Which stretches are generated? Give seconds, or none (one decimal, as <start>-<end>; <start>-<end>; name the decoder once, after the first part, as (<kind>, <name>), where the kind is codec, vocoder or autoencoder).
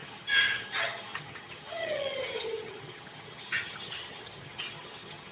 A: 0.0-5.3 (vocoder, HiFi-GAN)